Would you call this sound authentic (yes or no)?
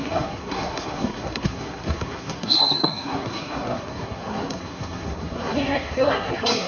no